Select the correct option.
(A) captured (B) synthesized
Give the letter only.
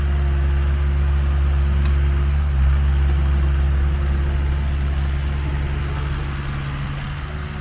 A